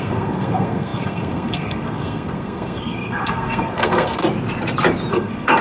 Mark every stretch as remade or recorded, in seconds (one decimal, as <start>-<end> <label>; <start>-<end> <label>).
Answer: 0.0-4.2 remade; 4.2-5.1 recorded; 5.1-5.6 remade